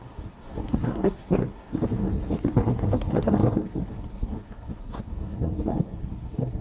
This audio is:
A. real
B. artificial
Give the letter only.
B